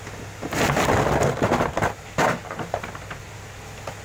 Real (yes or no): yes